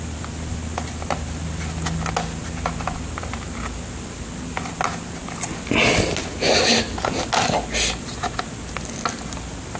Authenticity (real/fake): real